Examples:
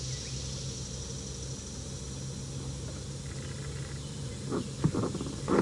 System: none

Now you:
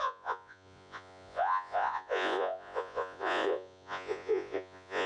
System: vocoder, Vocos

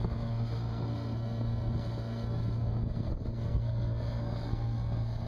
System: codec, SNAC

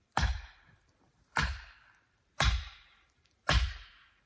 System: vocoder, BigVGAN v2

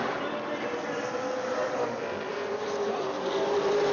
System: vocoder, BigVGAN v2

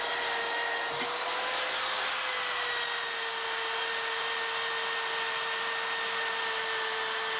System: none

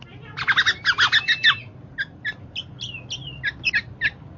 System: none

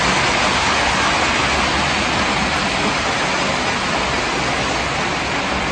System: none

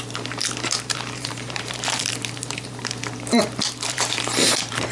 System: vocoder, BigVGAN v2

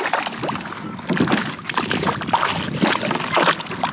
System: none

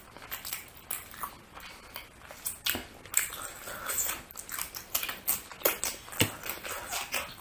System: none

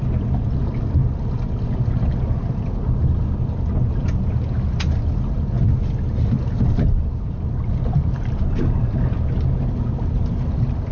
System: none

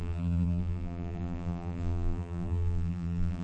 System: vocoder, BigVGAN v2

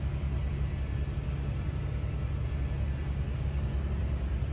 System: none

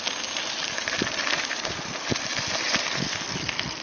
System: none